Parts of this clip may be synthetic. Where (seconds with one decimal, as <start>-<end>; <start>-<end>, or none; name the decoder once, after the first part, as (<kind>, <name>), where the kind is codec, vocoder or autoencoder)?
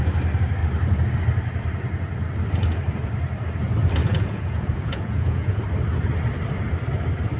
4.0-5.6 (vocoder, Vocos)